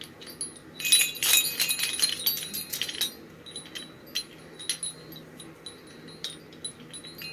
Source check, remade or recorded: recorded